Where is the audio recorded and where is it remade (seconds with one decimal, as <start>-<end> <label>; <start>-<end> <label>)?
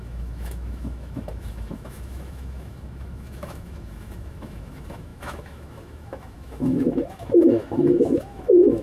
0.0-8.8 remade